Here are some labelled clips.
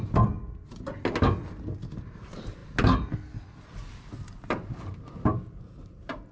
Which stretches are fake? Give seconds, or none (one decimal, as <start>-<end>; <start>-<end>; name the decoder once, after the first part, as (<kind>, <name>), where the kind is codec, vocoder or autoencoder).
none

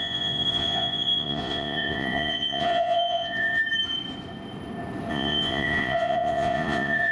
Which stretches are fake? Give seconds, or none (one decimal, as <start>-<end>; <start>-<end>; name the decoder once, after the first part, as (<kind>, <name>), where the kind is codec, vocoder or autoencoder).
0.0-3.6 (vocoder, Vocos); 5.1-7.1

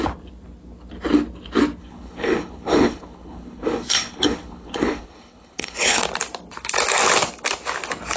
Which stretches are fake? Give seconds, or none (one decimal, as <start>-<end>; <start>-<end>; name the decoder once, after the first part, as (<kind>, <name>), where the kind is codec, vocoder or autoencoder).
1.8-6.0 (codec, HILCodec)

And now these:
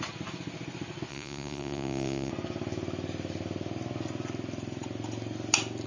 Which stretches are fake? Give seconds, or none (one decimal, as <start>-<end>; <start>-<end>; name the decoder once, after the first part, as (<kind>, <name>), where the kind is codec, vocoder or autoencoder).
1.1-2.3 (vocoder, Vocos)

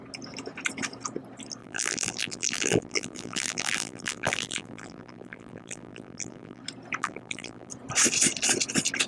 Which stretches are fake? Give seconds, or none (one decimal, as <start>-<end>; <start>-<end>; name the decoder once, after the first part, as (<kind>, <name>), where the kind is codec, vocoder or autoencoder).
1.6-6.6 (vocoder, BigVGAN v2); 7.0-7.7

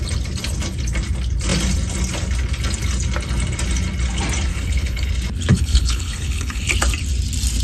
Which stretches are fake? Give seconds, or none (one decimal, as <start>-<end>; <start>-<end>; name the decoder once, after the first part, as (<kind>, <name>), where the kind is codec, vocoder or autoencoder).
4.5-5.1 (codec, HILCodec); 5.5-6.7

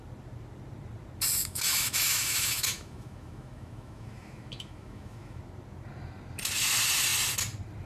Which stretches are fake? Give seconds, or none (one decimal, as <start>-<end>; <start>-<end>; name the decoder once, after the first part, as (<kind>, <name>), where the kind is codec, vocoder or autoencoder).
1.4-5.4 (autoencoder, DAC-VAE)